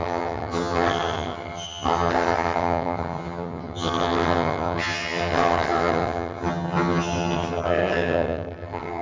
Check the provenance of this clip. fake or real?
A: fake